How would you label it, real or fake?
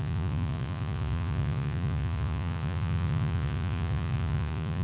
fake